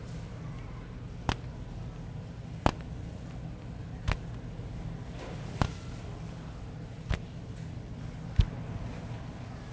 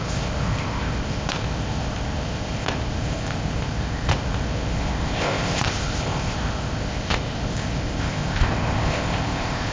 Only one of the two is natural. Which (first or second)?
first